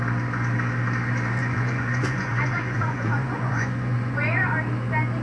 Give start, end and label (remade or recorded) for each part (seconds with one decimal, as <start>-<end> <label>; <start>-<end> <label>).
0.0-1.4 recorded; 1.4-4.5 remade; 4.5-5.2 recorded